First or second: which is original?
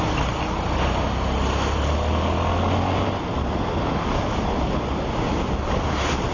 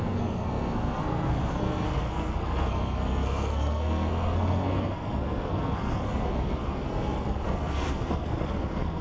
first